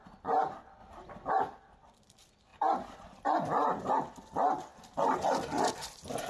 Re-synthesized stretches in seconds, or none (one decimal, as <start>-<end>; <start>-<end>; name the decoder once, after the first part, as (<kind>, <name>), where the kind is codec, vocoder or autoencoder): 0.0-0.8 (vocoder, BigVGAN v2); 1.3-4.7; 5.7-6.3